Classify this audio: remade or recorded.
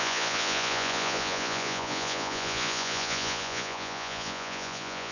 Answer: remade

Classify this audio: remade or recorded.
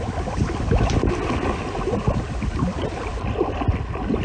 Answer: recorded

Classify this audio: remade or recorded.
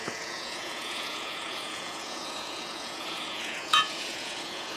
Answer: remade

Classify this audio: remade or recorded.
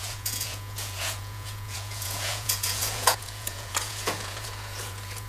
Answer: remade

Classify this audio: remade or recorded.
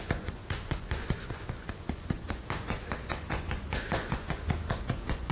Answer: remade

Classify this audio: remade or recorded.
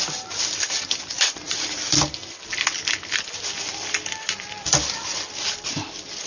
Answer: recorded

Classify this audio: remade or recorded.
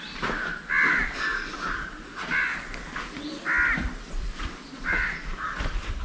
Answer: recorded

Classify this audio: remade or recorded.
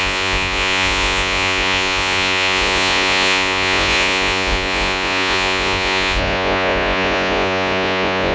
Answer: remade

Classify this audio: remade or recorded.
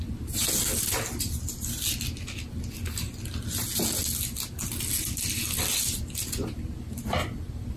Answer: recorded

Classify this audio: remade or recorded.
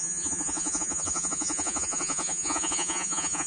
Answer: remade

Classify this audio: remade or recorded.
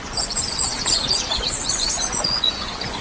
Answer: remade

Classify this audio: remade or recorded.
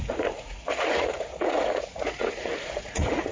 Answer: remade